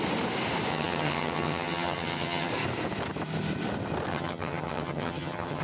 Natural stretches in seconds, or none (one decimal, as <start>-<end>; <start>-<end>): 0.0-0.7; 2.5-4.1

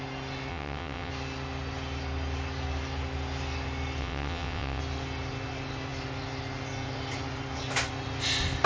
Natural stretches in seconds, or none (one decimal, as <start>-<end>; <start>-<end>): 0.0-0.5; 1.1-4.0; 4.8-8.7